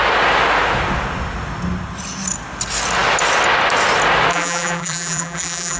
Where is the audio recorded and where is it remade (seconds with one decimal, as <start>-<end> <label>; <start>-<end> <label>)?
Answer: 0.0-4.3 recorded; 4.3-5.8 remade